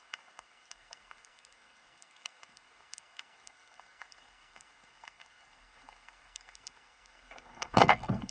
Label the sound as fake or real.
fake